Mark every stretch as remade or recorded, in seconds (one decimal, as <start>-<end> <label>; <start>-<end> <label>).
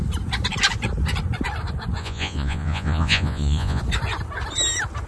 0.0-2.0 recorded; 2.0-3.8 remade; 3.8-5.1 recorded